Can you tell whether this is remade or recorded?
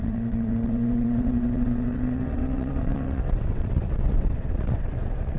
remade